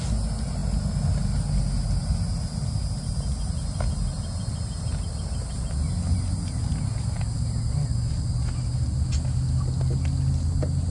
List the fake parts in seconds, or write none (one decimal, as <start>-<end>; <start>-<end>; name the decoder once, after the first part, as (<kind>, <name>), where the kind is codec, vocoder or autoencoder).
none